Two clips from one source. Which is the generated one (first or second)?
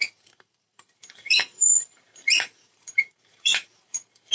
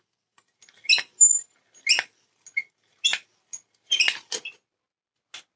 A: first